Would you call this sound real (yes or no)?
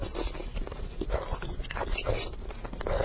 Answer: yes